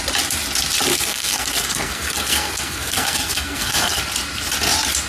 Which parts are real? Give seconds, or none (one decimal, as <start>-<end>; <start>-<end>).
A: 0.0-0.9; 4.0-5.1